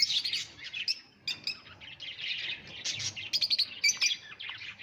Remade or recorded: recorded